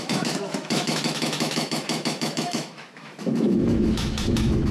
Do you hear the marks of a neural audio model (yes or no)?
yes